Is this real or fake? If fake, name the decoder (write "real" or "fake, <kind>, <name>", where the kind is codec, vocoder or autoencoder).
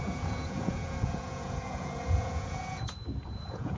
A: fake, vocoder, Vocos